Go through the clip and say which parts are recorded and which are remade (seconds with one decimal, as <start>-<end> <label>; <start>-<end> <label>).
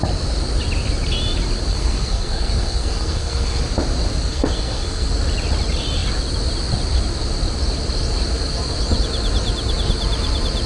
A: 0.0-1.7 recorded; 1.7-3.6 remade; 3.6-4.3 recorded; 4.3-5.1 remade; 5.1-10.7 recorded